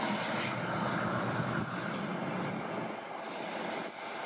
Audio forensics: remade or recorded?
recorded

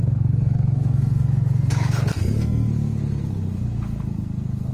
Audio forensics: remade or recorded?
remade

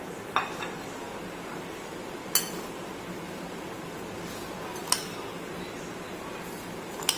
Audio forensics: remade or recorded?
recorded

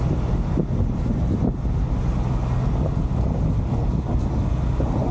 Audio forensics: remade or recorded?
recorded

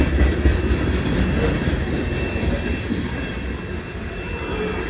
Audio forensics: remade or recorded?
recorded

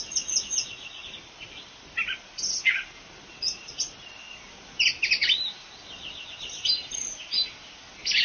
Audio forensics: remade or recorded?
recorded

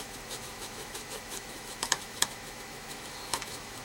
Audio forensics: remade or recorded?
remade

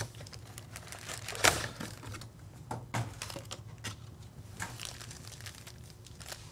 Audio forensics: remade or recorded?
recorded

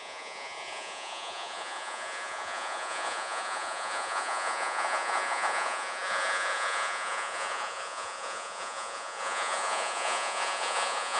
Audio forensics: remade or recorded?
remade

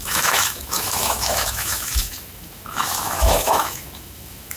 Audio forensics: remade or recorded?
remade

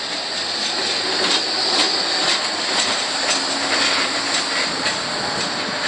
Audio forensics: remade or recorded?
recorded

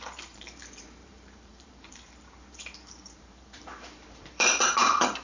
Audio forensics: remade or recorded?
remade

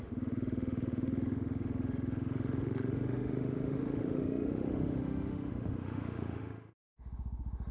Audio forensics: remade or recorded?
remade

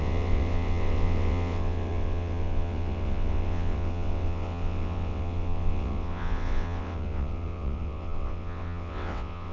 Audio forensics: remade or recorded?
remade